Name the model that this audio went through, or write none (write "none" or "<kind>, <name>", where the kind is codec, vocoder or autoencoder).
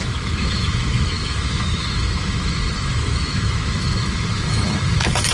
autoencoder, DAC-VAE